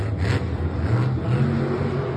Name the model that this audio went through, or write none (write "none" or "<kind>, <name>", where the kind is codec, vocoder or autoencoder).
none